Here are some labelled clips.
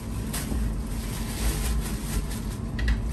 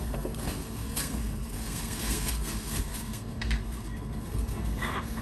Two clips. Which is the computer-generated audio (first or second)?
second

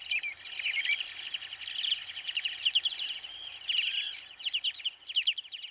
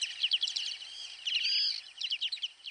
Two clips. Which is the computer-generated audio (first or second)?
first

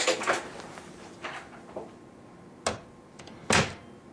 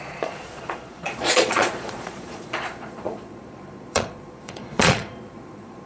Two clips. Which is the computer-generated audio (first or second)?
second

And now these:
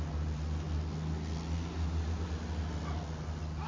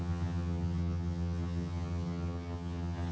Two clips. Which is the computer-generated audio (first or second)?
second